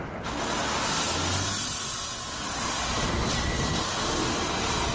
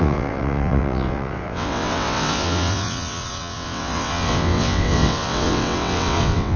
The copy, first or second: second